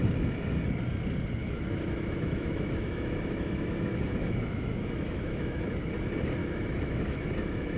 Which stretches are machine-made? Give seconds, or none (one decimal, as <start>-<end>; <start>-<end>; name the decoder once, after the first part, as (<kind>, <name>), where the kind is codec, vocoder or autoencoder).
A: 1.4-5.6 (autoencoder, DAC-VAE); 6.4-7.3